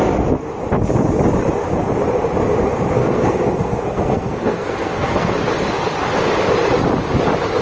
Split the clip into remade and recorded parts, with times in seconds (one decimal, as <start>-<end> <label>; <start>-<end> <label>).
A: 0.0-3.0 recorded; 3.0-5.3 remade; 5.3-7.6 recorded